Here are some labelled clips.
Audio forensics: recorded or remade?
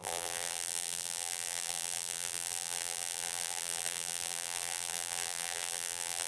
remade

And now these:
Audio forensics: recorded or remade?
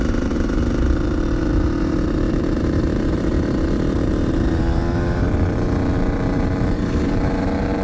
remade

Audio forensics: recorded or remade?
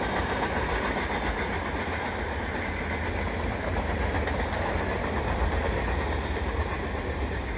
recorded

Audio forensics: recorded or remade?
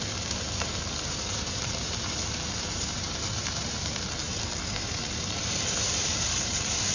remade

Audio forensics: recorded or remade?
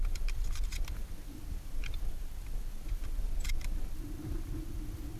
recorded